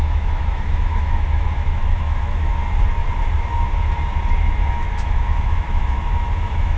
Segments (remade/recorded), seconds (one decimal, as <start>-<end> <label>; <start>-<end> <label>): 0.0-2.6 remade; 2.6-4.4 recorded; 4.4-6.8 remade